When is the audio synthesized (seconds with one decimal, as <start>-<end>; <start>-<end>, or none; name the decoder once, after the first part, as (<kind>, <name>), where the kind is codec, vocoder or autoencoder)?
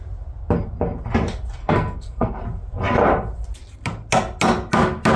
1.6-2.4 (codec, SNAC)